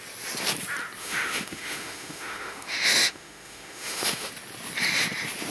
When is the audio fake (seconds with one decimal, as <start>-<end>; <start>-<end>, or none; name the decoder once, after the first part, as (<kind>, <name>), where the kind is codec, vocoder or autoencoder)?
1.0-4.3 (autoencoder, DAC-VAE)